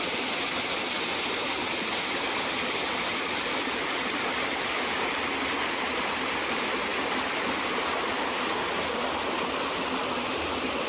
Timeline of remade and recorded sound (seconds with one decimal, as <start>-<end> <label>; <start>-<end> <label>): 0.0-10.9 recorded

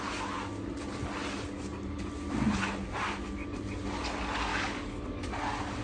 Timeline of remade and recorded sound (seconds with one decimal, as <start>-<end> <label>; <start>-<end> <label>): 0.0-4.5 recorded; 4.5-5.3 remade; 5.3-5.8 recorded

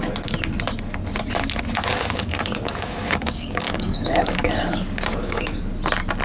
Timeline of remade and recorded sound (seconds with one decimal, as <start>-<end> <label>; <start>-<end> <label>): 0.0-1.9 recorded; 1.9-5.6 remade; 5.6-6.2 recorded

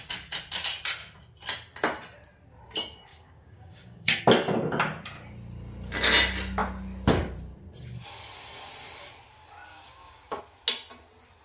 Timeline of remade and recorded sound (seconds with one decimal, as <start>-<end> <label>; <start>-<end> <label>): 0.0-3.1 recorded; 3.1-4.2 remade; 4.2-9.7 recorded; 9.7-10.4 remade; 10.4-11.4 recorded